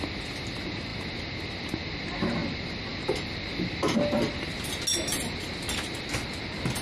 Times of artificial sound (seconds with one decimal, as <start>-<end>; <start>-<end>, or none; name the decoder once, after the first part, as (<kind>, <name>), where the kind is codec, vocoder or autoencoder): none